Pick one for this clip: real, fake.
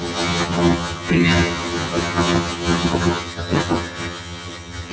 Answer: fake